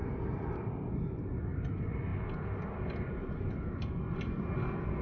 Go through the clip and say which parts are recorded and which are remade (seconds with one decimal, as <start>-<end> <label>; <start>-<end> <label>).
0.0-5.0 recorded